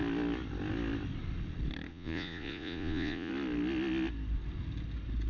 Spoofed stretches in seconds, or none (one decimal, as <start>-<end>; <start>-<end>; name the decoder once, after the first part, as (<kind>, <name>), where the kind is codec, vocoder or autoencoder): 1.9-3.3 (vocoder, Vocos)